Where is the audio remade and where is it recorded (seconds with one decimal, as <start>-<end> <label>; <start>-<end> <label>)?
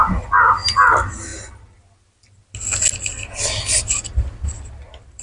0.0-5.2 recorded